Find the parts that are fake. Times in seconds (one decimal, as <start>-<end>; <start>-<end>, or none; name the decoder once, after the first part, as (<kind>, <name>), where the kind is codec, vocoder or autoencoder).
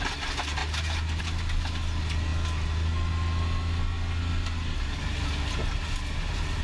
none